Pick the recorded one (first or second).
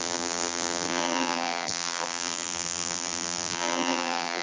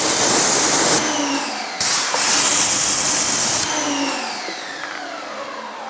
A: second